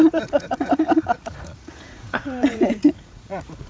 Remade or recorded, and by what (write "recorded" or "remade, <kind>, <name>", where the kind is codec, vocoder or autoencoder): remade, vocoder, Vocos